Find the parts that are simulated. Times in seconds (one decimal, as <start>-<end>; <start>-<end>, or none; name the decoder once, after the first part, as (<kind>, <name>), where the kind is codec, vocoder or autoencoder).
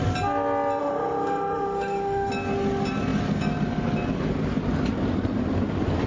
0.8-2.3 (autoencoder, DAC-VAE)